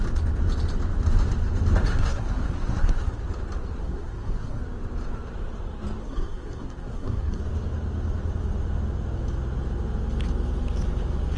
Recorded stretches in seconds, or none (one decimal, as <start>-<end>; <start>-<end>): 0.0-1.9; 3.2-3.8; 4.6-6.0; 7.4-11.4